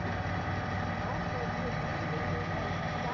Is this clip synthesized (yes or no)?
no